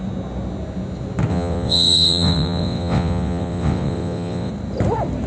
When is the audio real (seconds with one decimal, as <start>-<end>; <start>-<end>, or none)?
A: 0.0-1.3; 4.5-5.3